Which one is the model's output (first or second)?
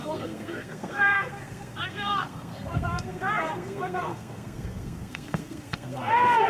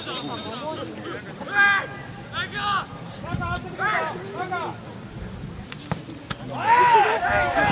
first